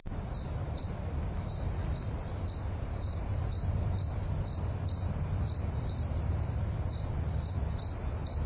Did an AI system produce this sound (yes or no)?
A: no